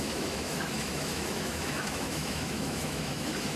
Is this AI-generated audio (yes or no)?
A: yes